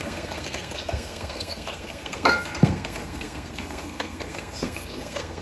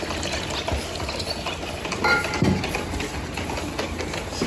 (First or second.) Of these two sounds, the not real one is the first